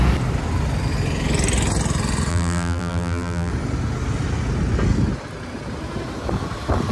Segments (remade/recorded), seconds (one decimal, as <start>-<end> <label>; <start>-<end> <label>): 0.0-2.3 recorded; 2.3-3.5 remade; 3.5-6.9 recorded